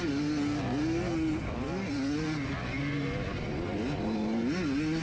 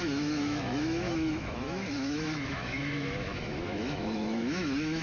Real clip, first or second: first